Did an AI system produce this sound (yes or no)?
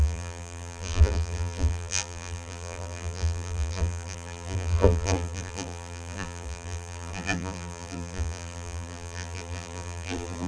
yes